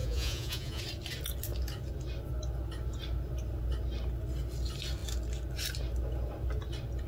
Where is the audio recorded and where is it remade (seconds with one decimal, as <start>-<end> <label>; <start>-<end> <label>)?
0.0-0.8 remade; 0.8-7.1 recorded